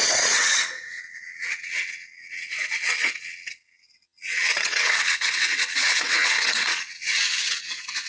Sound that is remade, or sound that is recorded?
remade